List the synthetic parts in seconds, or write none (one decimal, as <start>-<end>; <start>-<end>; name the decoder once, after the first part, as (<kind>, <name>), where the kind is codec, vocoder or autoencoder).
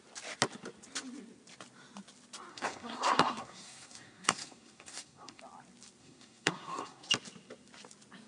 2.5-5.4 (codec, SNAC); 6.0-7.1